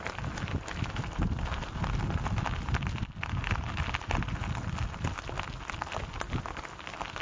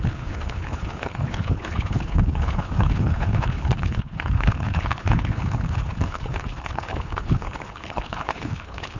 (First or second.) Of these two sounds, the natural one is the first